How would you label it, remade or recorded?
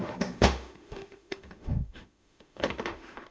remade